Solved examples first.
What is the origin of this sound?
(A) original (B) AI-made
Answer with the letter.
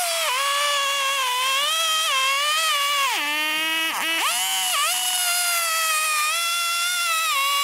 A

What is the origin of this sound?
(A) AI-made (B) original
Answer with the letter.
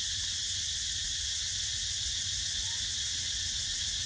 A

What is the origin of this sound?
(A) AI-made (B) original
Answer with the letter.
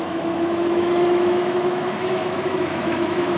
A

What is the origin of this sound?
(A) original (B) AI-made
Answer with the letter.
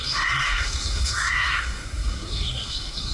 B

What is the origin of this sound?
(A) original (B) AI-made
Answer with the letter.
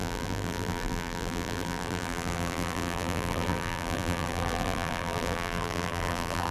B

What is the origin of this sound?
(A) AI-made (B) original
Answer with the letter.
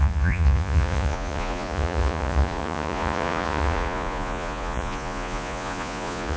A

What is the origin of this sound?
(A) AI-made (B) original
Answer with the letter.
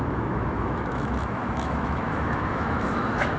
A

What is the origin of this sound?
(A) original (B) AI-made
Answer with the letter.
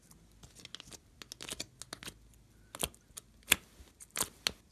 A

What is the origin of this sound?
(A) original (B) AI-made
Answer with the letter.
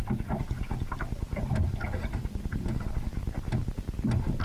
A